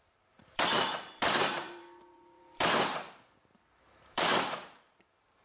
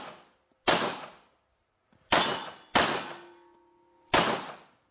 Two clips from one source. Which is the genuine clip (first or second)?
second